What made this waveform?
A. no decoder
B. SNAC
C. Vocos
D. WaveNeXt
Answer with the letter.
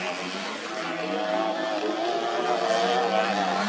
A